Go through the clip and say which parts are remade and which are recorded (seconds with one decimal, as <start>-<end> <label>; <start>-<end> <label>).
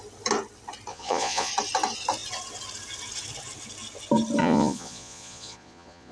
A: 0.0-0.9 recorded; 0.9-1.5 remade; 1.5-4.4 recorded; 4.4-6.1 remade